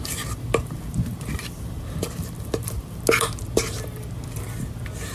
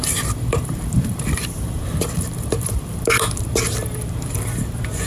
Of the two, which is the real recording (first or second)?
first